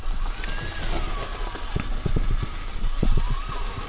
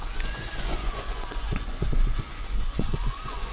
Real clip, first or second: first